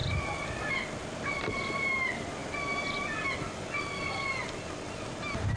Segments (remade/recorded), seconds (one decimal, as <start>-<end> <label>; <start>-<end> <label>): 0.0-0.7 remade; 0.7-5.6 recorded